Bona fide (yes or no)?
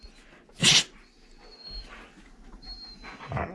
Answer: yes